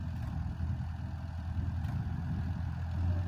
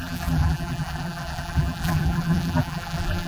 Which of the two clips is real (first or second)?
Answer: first